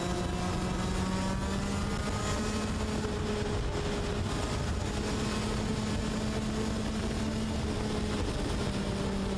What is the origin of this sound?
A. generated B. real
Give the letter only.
B